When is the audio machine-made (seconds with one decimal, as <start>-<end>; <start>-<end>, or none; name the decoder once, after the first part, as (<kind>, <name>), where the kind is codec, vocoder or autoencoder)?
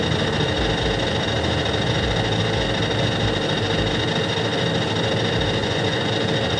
5.6-6.1 (vocoder, Vocos)